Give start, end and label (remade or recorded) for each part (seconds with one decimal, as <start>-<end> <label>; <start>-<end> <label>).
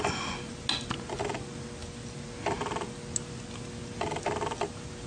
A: 0.0-5.1 recorded